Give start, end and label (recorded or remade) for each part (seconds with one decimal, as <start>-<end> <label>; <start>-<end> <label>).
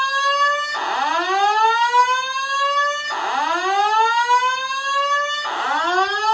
0.0-6.3 recorded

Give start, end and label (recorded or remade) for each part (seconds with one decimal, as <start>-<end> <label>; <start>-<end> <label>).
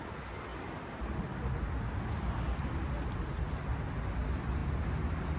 0.0-5.4 recorded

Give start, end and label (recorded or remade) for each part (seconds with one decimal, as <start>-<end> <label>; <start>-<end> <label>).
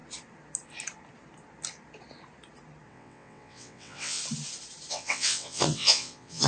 0.0-2.9 recorded; 2.9-4.2 remade; 4.2-4.9 recorded; 4.9-6.5 remade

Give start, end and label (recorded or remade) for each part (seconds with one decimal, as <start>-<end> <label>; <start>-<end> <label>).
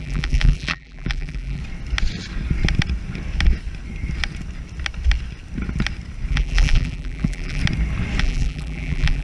0.0-1.6 remade; 1.6-6.3 recorded; 6.3-7.6 remade; 7.6-8.2 recorded; 8.2-9.2 remade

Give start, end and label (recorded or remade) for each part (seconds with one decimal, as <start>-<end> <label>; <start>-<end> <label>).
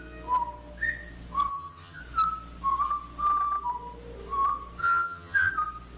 0.0-1.5 recorded; 1.5-2.0 remade; 2.0-4.8 recorded; 4.8-5.5 remade; 5.5-6.0 recorded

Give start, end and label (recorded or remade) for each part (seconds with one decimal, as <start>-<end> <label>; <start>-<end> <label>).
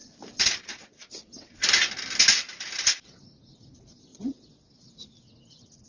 0.0-4.1 recorded; 4.1-4.7 remade; 4.7-5.9 recorded